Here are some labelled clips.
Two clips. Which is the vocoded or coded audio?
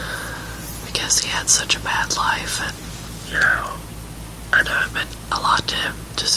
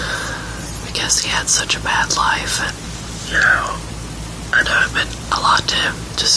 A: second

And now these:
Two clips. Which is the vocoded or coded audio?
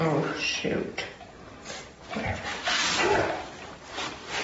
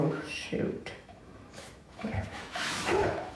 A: second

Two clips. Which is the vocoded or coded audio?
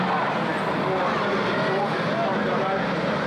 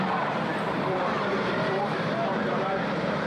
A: second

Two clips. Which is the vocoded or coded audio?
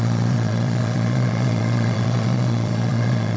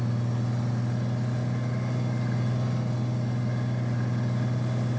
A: first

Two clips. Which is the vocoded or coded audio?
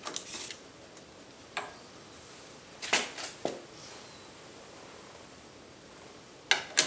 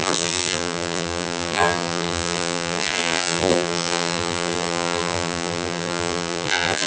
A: second